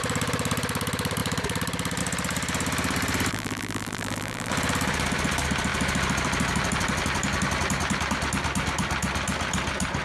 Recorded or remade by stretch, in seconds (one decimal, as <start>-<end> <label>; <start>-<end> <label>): 0.0-3.3 recorded; 3.3-4.5 remade; 4.5-10.0 recorded